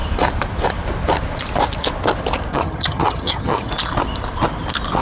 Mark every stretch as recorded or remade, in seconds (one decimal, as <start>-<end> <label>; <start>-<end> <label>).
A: 0.0-2.5 recorded; 2.5-3.7 remade; 3.7-5.0 recorded